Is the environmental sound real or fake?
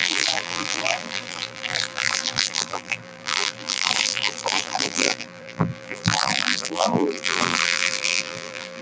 fake